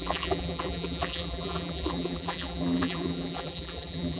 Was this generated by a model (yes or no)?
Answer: yes